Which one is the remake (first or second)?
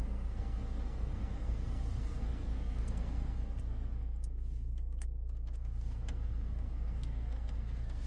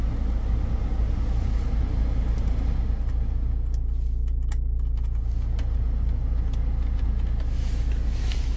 first